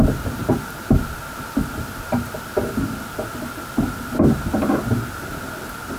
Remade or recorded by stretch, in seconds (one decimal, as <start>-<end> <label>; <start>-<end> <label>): 0.0-6.0 recorded